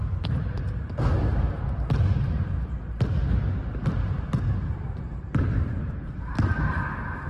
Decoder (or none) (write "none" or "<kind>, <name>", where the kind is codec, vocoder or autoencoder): none